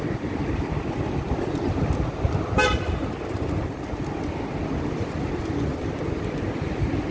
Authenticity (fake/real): real